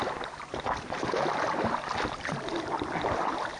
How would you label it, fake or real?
real